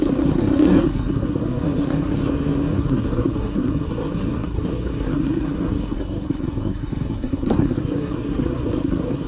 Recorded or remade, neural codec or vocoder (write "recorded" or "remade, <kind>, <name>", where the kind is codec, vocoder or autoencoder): remade, codec, SNAC